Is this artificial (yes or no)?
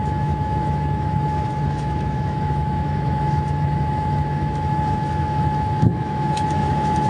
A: yes